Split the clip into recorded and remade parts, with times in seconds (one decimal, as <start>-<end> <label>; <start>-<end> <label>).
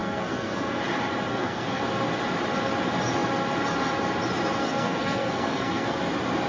0.0-0.8 remade; 0.8-1.3 recorded; 1.3-1.8 remade; 1.8-4.6 recorded; 4.6-6.0 remade; 6.0-6.5 recorded